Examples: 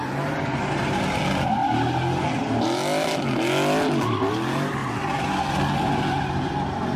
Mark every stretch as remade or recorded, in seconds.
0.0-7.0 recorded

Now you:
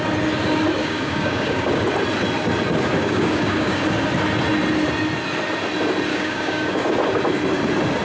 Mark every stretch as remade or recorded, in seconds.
0.0-0.8 recorded; 0.8-1.8 remade; 1.8-3.0 recorded; 3.0-3.8 remade; 3.8-6.1 recorded; 6.1-6.9 remade; 6.9-8.0 recorded

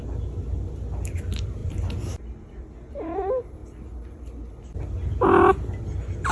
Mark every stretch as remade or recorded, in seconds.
0.0-6.3 recorded

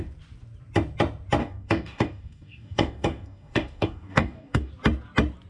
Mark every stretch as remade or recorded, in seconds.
0.0-1.4 recorded; 1.4-4.7 remade; 4.7-5.5 recorded

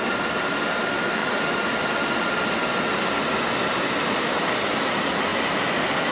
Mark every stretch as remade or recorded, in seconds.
0.0-6.1 recorded

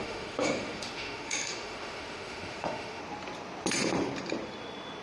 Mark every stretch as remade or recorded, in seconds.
0.0-3.0 remade; 3.0-5.0 recorded

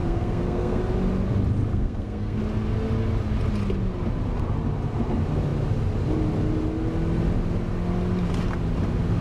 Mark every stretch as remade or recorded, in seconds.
0.0-0.8 remade; 0.8-1.7 recorded; 1.7-2.4 remade; 2.4-9.2 recorded

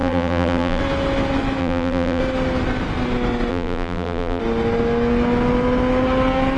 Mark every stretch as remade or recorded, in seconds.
0.0-0.8 remade; 0.8-1.6 recorded; 1.6-2.2 remade; 2.2-3.5 recorded; 3.5-4.4 remade; 4.4-6.6 recorded